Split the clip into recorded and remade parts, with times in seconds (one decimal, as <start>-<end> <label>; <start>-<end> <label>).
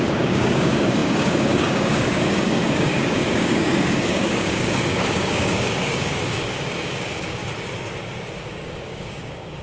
0.0-7.4 remade; 7.4-8.5 recorded; 8.5-9.6 remade